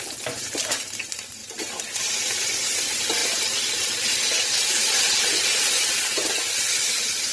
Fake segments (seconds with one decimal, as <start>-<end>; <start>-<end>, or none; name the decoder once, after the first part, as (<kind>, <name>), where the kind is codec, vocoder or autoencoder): 0.0-7.3 (vocoder, BigVGAN v2)